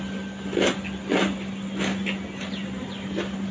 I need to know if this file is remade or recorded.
recorded